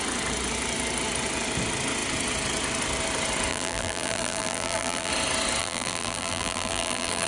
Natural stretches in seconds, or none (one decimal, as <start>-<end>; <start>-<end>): 0.0-3.5; 5.1-5.6